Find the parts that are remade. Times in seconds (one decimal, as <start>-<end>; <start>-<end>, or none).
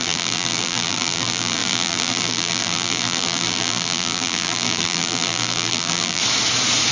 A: 0.0-6.2